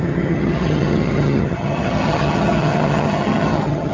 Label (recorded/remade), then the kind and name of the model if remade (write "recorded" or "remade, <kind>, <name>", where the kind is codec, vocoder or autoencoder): remade, vocoder, HiFi-GAN